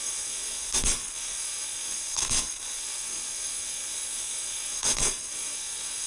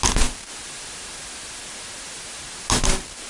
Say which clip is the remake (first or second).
first